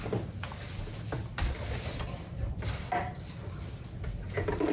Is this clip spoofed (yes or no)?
no